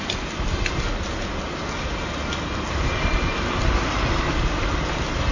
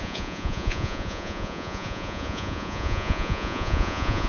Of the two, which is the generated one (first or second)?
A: second